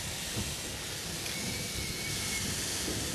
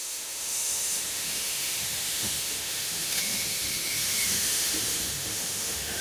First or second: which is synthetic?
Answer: second